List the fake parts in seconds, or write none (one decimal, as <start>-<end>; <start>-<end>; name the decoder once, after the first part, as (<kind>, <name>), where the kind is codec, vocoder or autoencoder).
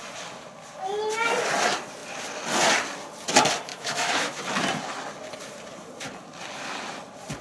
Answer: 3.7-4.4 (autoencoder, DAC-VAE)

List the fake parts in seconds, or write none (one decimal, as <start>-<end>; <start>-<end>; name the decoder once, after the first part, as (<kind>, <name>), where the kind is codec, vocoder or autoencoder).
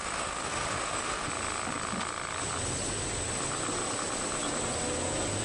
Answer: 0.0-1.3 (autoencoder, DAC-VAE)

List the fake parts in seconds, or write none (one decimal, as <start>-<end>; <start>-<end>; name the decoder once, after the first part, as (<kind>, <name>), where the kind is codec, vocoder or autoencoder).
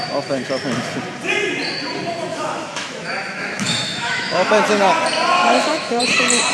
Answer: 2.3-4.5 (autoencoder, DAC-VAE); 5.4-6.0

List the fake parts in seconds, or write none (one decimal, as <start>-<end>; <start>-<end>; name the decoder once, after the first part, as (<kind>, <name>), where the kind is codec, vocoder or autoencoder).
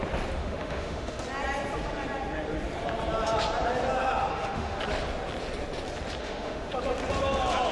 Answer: 0.4-1.2 (autoencoder, DAC-VAE); 4.3-4.8; 6.2-6.7